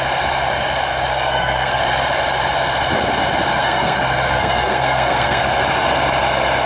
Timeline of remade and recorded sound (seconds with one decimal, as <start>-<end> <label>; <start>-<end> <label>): 0.0-1.1 recorded; 1.1-1.8 remade; 1.8-3.5 recorded; 3.5-5.4 remade; 5.4-6.7 recorded